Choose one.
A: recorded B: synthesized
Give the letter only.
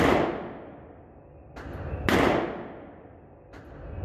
A